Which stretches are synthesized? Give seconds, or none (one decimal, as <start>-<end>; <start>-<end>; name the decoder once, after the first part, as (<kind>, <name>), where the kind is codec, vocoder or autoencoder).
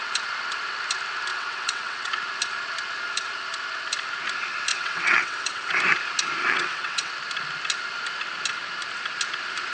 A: 1.3-2.1 (vocoder, WaveNeXt); 4.7-5.8; 6.4-7.1